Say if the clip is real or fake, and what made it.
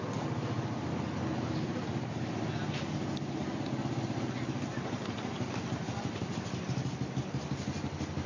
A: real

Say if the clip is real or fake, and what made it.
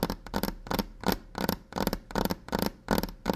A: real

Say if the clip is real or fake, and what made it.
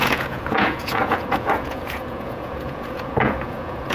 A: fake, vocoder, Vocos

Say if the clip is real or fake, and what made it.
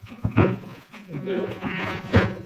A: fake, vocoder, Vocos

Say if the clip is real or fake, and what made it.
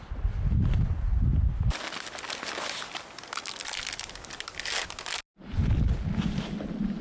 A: real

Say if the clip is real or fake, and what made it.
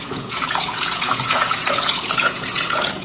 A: fake, vocoder, Vocos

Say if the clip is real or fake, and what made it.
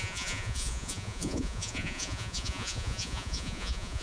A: fake, vocoder, Vocos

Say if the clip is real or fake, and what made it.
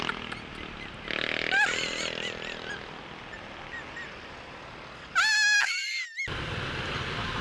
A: real